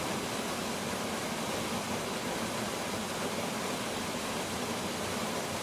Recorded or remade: recorded